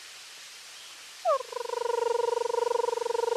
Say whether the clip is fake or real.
real